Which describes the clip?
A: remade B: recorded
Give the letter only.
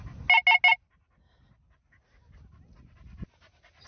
B